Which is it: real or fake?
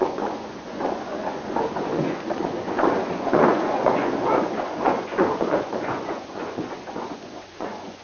fake